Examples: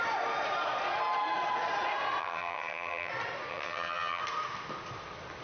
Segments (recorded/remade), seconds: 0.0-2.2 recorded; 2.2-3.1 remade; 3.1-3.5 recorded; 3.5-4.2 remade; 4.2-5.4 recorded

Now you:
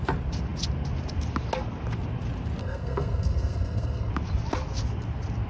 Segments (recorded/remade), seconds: 0.0-2.6 recorded; 2.6-4.1 remade; 4.1-5.5 recorded

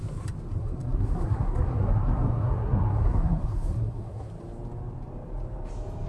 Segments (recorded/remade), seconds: 0.0-0.6 recorded; 0.6-4.3 remade; 4.3-6.1 recorded

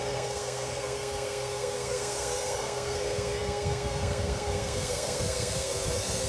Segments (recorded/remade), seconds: 0.0-6.3 remade

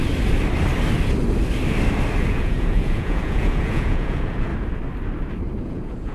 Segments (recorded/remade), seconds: 0.0-2.2 recorded; 2.2-4.5 remade; 4.5-5.6 recorded; 5.6-6.1 remade